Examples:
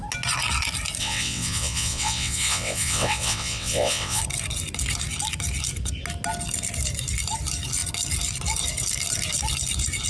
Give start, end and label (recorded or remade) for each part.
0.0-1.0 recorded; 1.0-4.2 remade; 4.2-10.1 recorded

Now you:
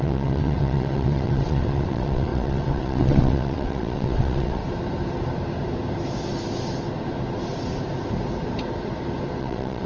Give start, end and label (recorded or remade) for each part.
0.0-4.6 remade; 4.6-9.4 recorded; 9.4-9.9 remade

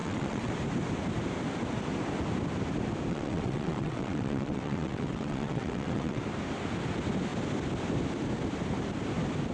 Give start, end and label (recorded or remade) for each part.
0.0-0.5 remade; 0.5-3.1 recorded; 3.1-6.2 remade; 6.2-9.5 recorded

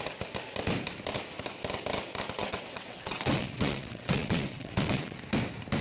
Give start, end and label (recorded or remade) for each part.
0.0-2.4 recorded; 2.4-5.2 remade; 5.2-5.8 recorded

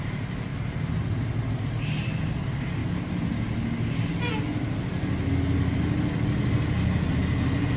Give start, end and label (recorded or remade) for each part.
0.0-7.8 recorded

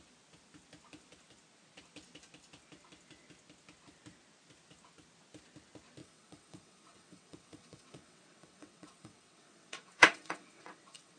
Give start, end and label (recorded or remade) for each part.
0.0-6.0 recorded; 6.0-11.2 remade

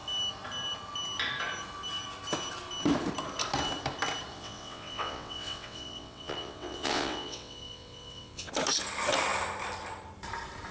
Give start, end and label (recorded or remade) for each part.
0.0-4.3 recorded; 4.3-8.5 remade; 8.5-10.7 recorded